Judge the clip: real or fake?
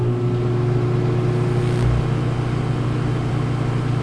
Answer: real